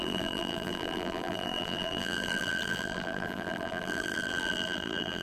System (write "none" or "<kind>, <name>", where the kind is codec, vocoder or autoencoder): vocoder, BigVGAN v2